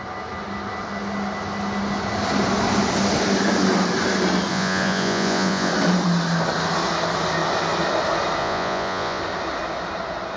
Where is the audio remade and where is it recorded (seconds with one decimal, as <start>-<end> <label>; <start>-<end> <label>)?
0.0-4.5 recorded; 4.5-5.7 remade; 5.7-8.4 recorded; 8.4-9.2 remade; 9.2-10.4 recorded